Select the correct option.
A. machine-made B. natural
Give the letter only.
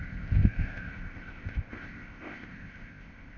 A